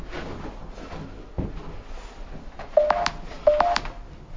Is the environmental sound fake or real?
real